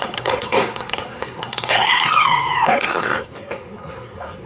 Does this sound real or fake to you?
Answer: fake